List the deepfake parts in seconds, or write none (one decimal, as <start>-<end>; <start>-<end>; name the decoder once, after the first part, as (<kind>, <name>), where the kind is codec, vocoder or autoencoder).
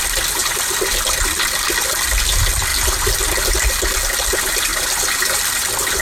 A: 0.4-1.5 (vocoder, BigVGAN v2); 4.7-6.0